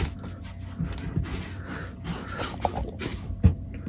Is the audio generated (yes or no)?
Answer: no